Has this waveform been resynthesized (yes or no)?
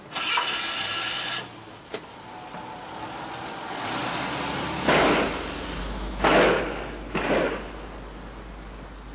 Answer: no